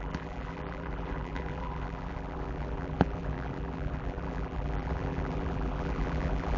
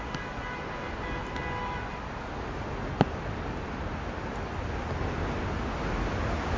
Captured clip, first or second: second